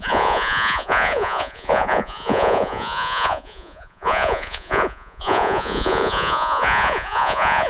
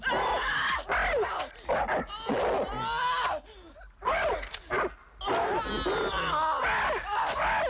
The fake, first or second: first